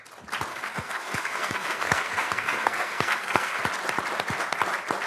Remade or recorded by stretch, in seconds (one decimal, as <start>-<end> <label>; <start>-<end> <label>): 0.0-0.5 recorded; 0.5-3.6 remade; 3.6-5.1 recorded